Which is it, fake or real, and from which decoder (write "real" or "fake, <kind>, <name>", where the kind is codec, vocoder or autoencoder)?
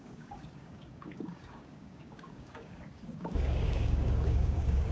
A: fake, codec, DAC